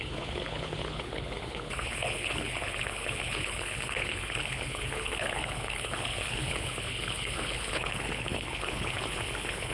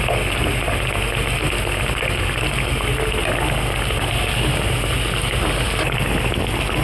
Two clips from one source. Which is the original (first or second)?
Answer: second